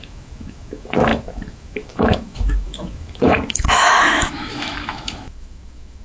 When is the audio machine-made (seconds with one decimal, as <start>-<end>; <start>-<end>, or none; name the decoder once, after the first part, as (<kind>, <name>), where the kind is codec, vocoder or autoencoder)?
0.0-6.0 (autoencoder, DAC-VAE)